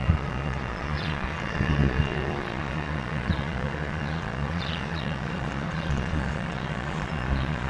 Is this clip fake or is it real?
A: fake